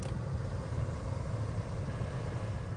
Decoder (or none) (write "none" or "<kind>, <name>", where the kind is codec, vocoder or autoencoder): none